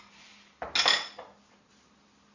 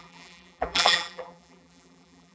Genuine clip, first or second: first